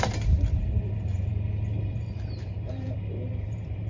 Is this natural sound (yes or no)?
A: no